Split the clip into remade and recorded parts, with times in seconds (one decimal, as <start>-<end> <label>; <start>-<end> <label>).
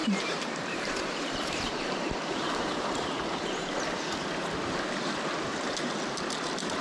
0.0-4.1 remade; 4.1-6.8 recorded